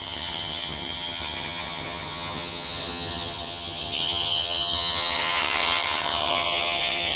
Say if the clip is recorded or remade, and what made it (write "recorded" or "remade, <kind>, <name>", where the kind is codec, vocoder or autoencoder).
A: remade, vocoder, HiFi-GAN